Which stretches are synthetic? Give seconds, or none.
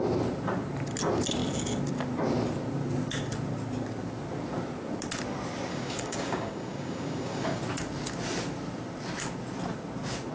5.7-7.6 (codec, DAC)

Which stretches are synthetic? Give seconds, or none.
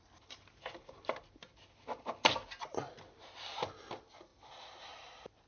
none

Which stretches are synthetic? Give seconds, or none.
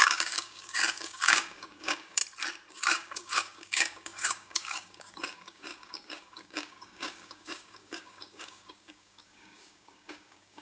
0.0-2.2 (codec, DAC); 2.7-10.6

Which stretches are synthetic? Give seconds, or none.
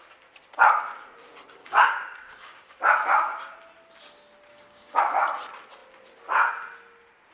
1.6-2.7 (codec, DAC); 4.5-5.0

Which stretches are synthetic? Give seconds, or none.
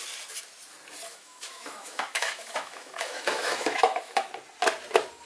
1.1-4.3 (autoencoder, DAC-VAE)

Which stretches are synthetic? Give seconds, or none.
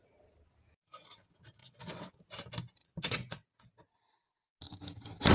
1.6-2.2 (vocoder, WaveNeXt); 2.8-3.7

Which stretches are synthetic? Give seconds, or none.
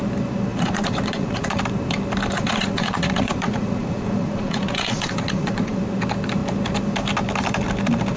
0.5-1.6 (vocoder, Vocos); 2.3-5.8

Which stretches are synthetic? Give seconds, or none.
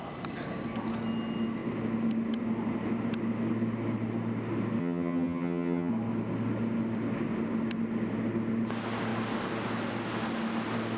4.8-5.9 (vocoder, HiFi-GAN)